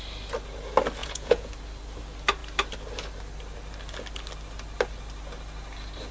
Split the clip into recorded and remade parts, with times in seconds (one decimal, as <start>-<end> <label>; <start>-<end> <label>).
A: 0.0-1.0 recorded; 1.0-1.5 remade; 1.5-6.1 recorded